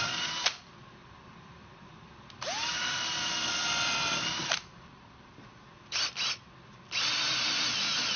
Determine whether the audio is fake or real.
fake